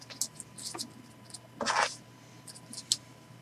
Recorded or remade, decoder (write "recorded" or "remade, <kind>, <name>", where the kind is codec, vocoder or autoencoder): recorded